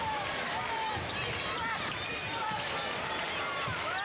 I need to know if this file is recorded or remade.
recorded